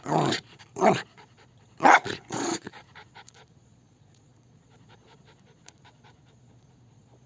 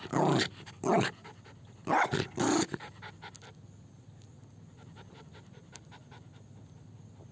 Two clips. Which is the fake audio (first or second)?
first